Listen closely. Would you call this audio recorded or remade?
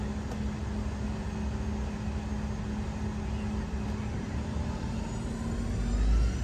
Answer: recorded